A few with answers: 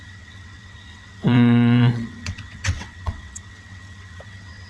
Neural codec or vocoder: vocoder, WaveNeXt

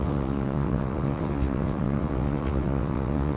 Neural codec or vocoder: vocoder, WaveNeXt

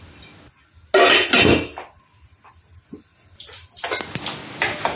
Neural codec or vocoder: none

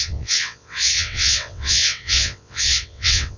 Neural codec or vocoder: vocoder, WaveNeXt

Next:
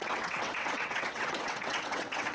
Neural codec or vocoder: vocoder, WaveNeXt